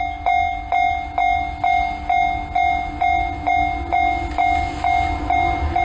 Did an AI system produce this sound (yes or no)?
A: no